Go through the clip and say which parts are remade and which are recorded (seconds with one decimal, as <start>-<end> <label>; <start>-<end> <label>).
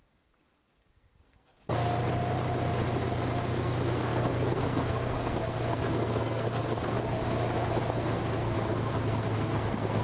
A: 0.0-1.8 remade; 1.8-3.6 recorded; 3.6-7.2 remade; 7.2-7.8 recorded; 7.8-10.0 remade